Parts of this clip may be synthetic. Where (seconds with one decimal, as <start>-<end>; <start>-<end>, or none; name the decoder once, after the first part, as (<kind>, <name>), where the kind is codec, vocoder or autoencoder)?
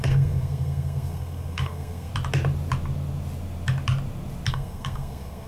0.0-2.1 (codec, SNAC); 4.5-5.5